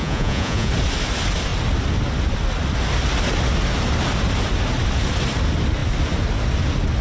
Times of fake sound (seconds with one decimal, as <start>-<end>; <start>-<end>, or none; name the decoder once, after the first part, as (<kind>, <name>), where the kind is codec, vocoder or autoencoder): 0.0-0.7 (vocoder, Vocos)